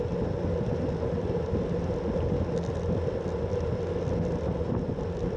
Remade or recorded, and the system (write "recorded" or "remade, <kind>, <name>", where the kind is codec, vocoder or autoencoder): recorded